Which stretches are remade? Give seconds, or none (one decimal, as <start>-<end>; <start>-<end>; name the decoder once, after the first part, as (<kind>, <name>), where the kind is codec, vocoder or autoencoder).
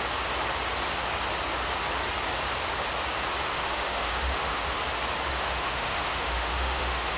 3.5-4.8 (autoencoder, DAC-VAE); 5.3-7.2